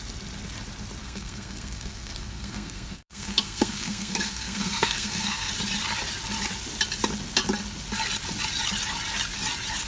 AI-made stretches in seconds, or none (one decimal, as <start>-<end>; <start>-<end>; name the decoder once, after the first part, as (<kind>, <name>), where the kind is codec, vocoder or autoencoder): 1.0-5.5 (codec, SNAC)